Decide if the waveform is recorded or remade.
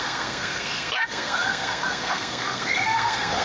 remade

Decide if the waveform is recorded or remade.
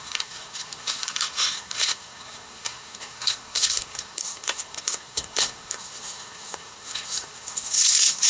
remade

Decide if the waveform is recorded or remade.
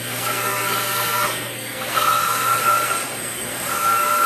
remade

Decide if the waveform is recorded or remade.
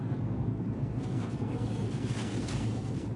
remade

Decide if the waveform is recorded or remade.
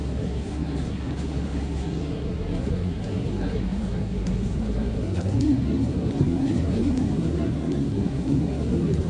remade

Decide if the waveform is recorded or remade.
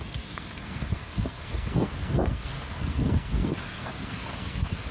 remade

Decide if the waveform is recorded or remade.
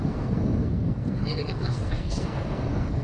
remade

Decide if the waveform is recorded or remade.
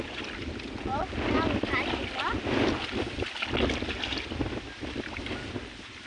recorded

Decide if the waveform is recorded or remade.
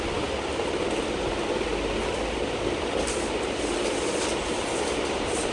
recorded